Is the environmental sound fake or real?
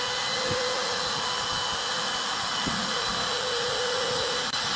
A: real